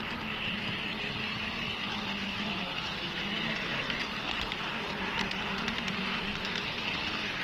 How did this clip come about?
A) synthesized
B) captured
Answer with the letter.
B